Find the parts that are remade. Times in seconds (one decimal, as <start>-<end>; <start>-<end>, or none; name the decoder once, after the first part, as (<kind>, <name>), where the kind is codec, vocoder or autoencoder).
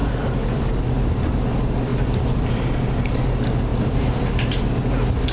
0.0-0.9 (vocoder, BigVGAN v2); 1.9-2.7; 3.7-4.3